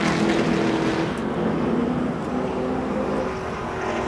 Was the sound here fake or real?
real